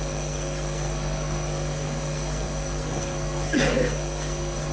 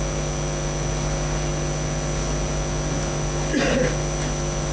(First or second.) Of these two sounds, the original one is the second